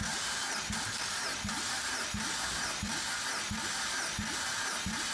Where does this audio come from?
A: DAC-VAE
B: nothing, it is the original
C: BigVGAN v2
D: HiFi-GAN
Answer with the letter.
C